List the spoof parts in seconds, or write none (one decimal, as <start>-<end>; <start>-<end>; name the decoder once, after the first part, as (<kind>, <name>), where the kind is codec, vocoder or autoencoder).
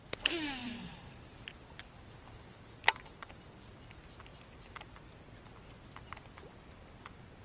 0.6-1.5 (vocoder, BigVGAN v2); 2.8-3.5